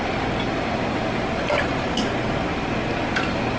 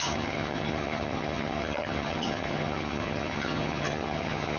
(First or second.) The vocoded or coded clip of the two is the second